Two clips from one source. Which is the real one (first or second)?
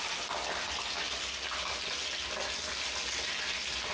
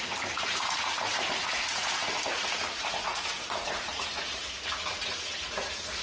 first